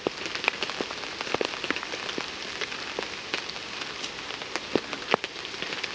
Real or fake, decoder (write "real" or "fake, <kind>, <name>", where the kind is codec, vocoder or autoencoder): real